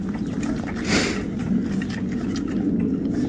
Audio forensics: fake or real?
real